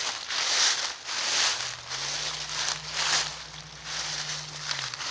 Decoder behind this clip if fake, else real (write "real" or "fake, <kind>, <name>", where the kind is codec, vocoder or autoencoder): real